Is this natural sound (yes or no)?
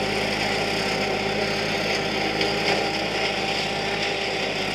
yes